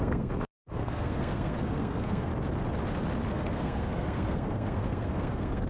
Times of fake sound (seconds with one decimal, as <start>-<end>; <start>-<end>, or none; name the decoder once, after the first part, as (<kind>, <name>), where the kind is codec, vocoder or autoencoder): 0.0-2.3 (codec, SNAC); 3.3-5.7

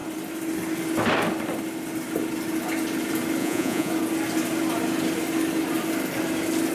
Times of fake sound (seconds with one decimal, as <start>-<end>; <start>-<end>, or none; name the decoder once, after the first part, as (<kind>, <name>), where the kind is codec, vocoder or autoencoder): 3.4-3.9 (vocoder, Vocos)